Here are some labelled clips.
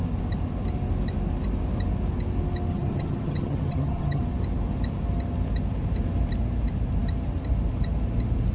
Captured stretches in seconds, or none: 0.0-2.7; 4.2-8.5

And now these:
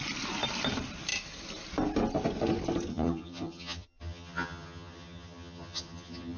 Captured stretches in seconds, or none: 0.0-2.9

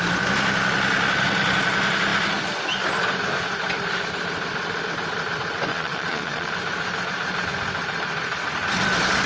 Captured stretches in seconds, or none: 0.0-5.7; 6.5-9.3

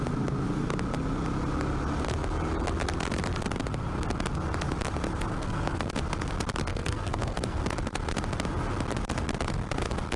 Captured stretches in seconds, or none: 0.0-5.3; 5.9-6.7; 7.6-10.2